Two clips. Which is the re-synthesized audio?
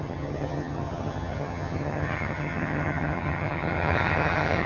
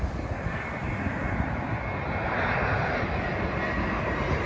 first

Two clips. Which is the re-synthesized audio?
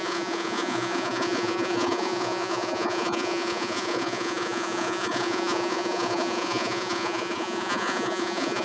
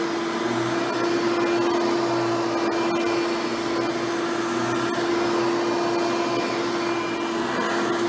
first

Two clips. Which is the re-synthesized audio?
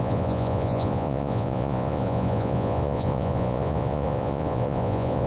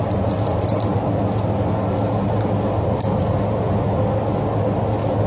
first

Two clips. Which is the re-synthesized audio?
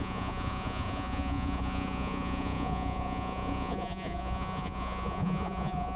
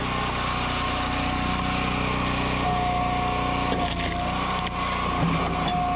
first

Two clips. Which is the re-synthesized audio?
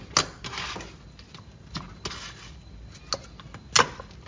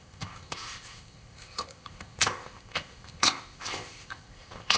second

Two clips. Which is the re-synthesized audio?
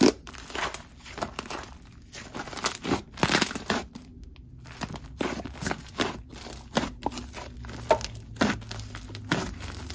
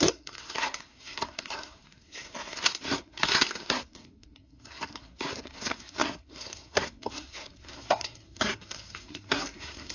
second